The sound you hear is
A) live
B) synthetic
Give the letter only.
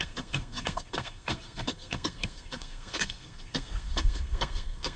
B